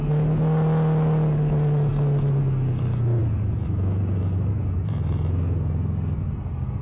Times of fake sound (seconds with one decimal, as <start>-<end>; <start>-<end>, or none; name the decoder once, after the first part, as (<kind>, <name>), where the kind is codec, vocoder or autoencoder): none